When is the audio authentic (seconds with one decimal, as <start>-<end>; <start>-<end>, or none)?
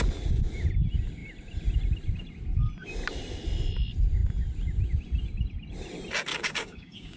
0.0-6.3